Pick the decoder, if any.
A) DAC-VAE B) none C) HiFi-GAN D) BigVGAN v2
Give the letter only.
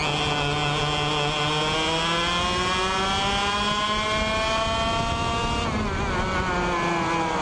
B